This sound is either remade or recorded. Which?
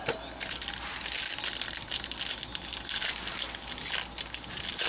recorded